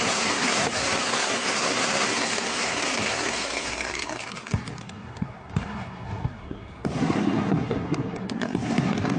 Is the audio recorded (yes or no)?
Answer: no